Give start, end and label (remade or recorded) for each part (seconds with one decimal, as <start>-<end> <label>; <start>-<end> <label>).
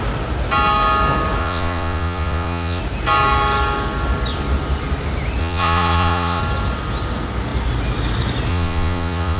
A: 0.0-1.4 recorded; 1.4-2.8 remade; 2.8-5.4 recorded; 5.4-6.4 remade; 6.4-8.5 recorded; 8.5-9.4 remade